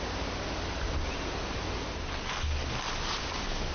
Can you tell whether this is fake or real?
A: real